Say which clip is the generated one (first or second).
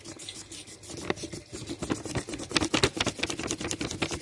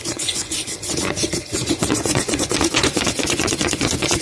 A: second